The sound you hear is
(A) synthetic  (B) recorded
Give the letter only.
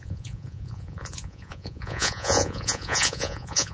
A